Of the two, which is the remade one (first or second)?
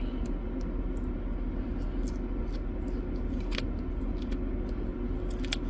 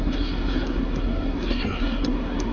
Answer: second